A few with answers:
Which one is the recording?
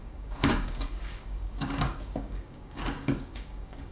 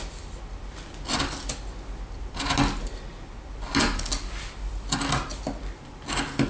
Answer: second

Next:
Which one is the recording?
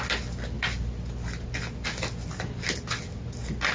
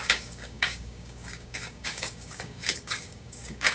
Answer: first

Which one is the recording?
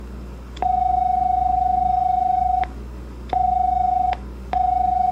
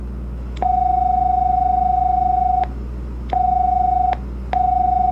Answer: second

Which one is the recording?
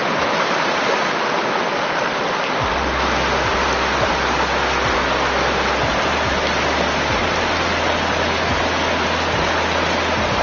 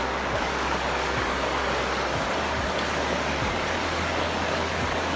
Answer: first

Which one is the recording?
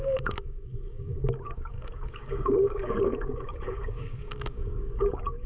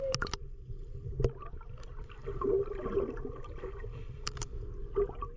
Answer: second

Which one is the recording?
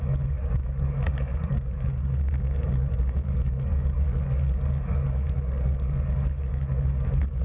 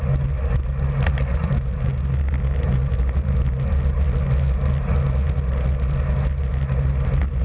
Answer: second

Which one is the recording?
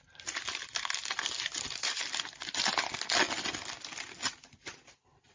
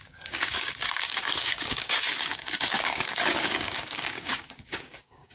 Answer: first